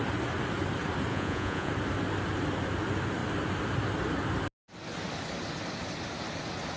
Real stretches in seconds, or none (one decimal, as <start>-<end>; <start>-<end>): 0.0-1.1; 1.7-6.8